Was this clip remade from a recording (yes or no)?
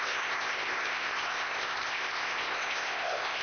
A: yes